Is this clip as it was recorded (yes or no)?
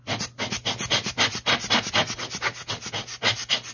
yes